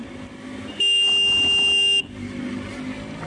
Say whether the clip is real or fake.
real